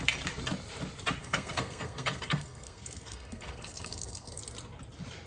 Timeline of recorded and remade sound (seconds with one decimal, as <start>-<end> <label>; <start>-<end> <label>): 0.0-1.2 recorded; 1.2-4.4 remade; 4.4-5.3 recorded